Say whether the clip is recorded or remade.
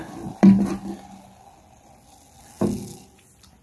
recorded